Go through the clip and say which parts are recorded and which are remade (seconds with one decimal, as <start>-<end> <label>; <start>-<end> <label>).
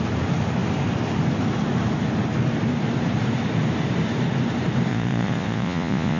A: 0.0-4.9 recorded; 4.9-6.2 remade